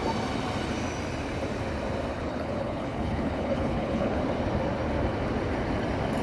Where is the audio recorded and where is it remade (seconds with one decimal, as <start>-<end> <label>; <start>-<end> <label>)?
0.0-2.1 recorded; 2.1-4.2 remade; 4.2-6.2 recorded